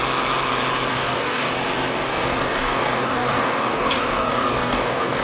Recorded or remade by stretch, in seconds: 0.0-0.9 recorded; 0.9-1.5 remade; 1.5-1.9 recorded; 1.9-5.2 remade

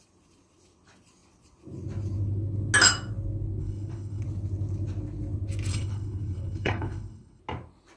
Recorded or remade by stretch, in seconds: 0.0-3.6 recorded; 3.6-4.2 remade; 4.2-5.7 recorded; 5.7-7.4 remade; 7.4-8.0 recorded

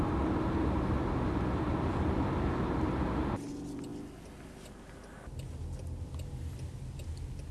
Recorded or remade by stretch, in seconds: 0.0-7.5 recorded

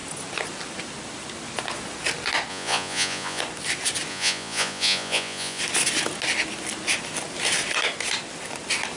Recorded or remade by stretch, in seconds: 0.0-2.5 recorded; 2.5-3.4 remade; 3.4-4.1 recorded; 4.1-5.6 remade; 5.6-9.0 recorded

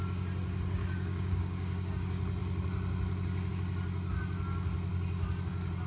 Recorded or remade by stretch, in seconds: 0.0-0.8 recorded; 0.8-1.9 remade; 1.9-5.9 recorded